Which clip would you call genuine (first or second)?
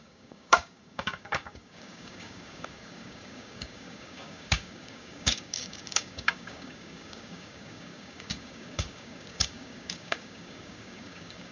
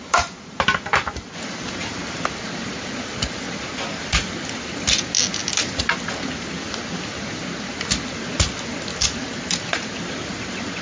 second